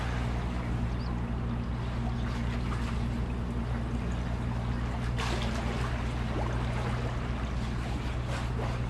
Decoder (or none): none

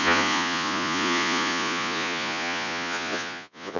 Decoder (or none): vocoder, Vocos